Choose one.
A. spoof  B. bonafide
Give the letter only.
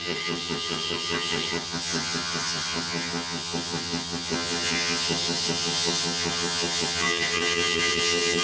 A